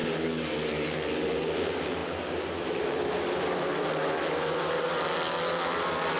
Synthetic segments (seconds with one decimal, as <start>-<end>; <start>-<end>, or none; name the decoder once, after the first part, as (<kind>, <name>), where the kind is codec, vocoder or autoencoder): none